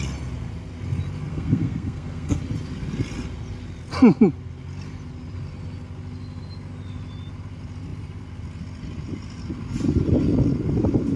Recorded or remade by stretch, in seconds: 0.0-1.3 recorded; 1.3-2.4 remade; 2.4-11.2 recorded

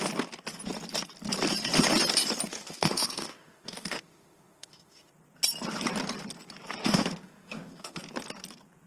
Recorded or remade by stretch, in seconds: 0.0-2.5 recorded; 2.5-5.1 remade; 5.1-6.8 recorded; 6.8-8.0 remade; 8.0-8.9 recorded

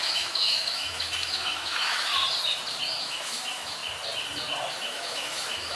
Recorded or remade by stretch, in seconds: 0.0-2.1 remade; 2.1-3.0 recorded; 3.0-3.8 remade; 3.8-4.7 recorded; 4.7-5.8 remade

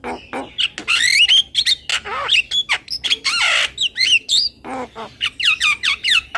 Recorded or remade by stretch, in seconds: 0.0-6.4 recorded

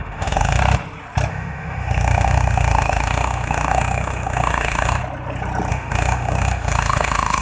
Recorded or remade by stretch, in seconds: 0.0-0.6 remade; 0.6-1.3 recorded; 1.3-5.0 remade; 5.0-5.7 recorded; 5.7-7.4 remade